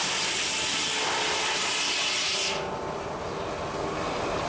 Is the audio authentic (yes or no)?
yes